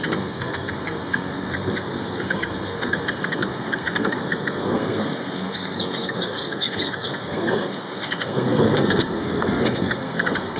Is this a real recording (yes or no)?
no